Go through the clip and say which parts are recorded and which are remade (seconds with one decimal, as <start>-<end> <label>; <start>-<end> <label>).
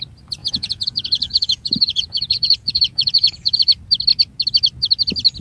0.0-0.4 recorded; 0.4-3.6 remade; 3.6-5.4 recorded